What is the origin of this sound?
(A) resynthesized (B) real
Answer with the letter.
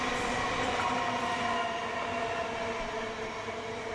B